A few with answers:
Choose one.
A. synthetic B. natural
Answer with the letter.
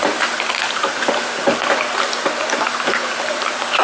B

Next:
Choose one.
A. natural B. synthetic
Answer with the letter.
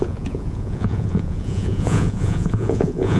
B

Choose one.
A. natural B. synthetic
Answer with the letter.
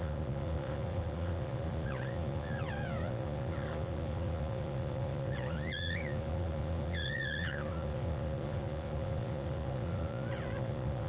B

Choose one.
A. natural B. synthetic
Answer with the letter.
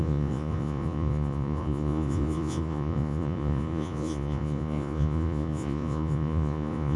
B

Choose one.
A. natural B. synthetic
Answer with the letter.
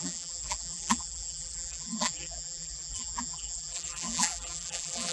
B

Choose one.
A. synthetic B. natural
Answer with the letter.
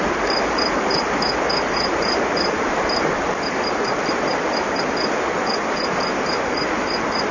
B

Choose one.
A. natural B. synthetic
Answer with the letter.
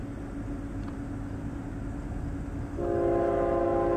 A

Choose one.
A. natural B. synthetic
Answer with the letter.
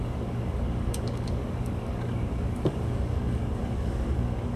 B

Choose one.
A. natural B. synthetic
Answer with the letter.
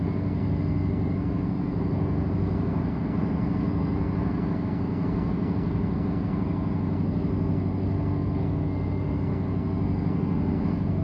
B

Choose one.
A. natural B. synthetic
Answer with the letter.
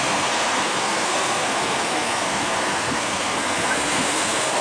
B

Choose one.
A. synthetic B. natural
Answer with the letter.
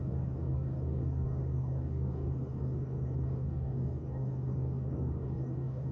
A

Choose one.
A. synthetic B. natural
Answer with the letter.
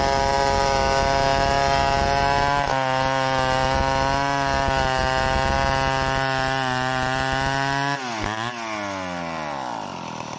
B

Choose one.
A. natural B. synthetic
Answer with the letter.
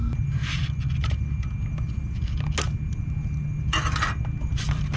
A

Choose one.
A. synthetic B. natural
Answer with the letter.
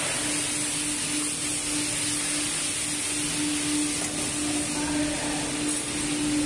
B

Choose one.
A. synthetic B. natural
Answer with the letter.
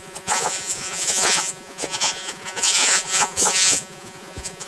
A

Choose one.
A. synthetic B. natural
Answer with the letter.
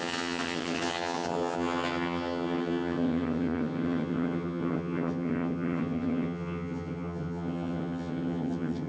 A